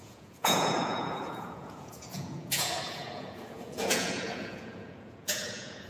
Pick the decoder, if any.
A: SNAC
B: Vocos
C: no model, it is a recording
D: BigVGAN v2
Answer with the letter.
B